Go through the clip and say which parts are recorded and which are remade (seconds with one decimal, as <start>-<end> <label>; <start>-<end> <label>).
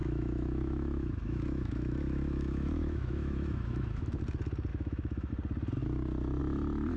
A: 0.0-4.2 remade; 4.2-4.7 recorded; 4.7-5.3 remade; 5.3-7.0 recorded